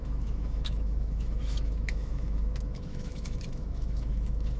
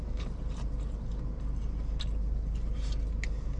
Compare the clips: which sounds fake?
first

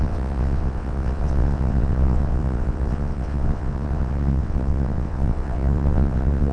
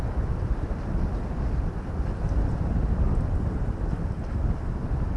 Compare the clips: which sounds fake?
first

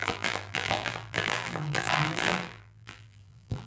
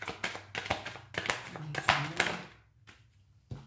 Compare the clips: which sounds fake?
first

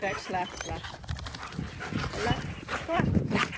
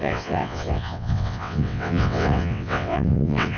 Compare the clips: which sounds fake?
second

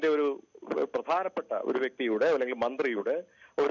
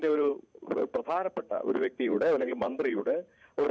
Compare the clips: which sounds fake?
second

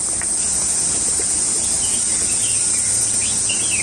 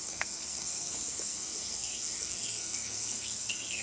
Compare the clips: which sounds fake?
second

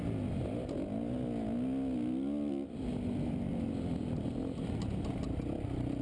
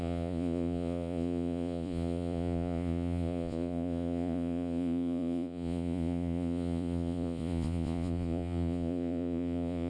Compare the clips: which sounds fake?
second